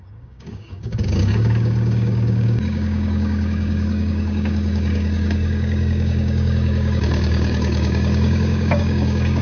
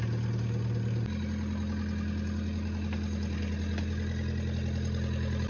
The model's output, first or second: first